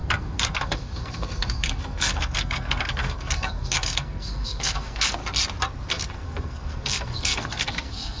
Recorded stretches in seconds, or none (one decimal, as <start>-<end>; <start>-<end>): 5.2-5.9